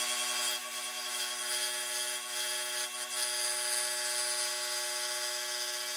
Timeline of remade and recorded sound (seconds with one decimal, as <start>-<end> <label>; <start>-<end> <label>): 0.0-0.6 recorded; 0.6-1.2 remade; 1.2-6.0 recorded